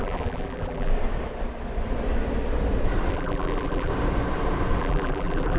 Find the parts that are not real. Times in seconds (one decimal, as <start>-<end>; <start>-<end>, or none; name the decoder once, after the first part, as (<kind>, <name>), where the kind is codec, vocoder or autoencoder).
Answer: 0.0-0.9 (vocoder, BigVGAN v2); 3.1-3.9; 4.8-5.6